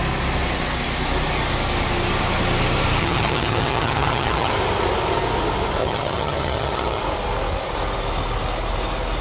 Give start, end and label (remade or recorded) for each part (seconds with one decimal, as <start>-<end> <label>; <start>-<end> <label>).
0.0-3.0 recorded; 3.0-4.5 remade; 4.5-5.8 recorded; 5.8-7.0 remade; 7.0-9.2 recorded